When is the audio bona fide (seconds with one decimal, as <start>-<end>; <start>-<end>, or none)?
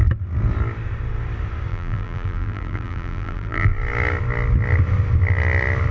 0.0-1.7; 3.7-5.9